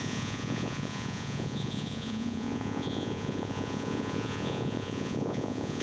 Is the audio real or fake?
fake